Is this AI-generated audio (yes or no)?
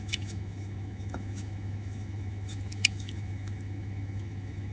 yes